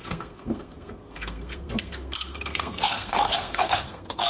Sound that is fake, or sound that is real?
fake